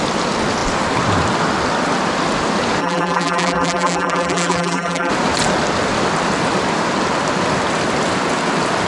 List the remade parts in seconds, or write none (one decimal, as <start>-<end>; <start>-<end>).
2.8-5.1